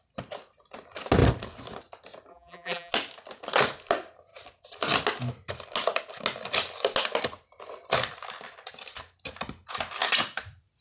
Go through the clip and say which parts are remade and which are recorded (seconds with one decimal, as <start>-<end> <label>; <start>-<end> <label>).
0.0-2.3 recorded; 2.3-2.9 remade; 2.9-10.8 recorded